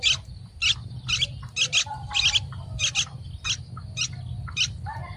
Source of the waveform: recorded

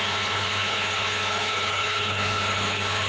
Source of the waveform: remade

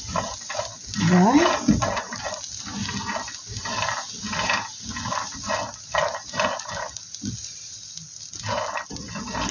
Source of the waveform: recorded